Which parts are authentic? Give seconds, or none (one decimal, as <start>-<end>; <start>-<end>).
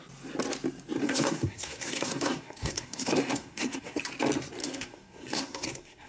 0.0-1.0; 4.0-4.6